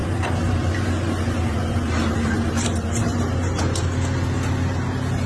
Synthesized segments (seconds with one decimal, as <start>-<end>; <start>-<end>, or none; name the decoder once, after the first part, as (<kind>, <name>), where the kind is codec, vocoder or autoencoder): 0.0-3.2 (vocoder, BigVGAN v2)